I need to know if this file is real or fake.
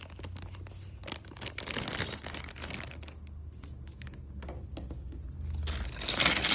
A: real